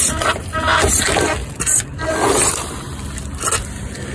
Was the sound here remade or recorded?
recorded